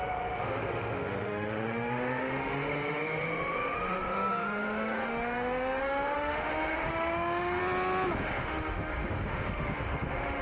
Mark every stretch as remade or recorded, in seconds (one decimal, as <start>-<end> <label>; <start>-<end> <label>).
0.0-7.6 remade; 7.6-8.2 recorded; 8.2-10.4 remade